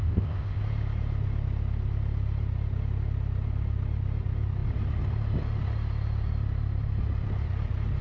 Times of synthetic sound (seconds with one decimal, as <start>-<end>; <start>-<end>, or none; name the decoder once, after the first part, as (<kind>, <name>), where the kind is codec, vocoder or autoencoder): 0.0-0.6 (codec, ZipCodec)